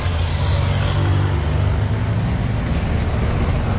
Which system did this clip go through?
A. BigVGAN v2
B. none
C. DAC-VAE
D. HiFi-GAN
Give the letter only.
B